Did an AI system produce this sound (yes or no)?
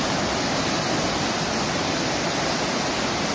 no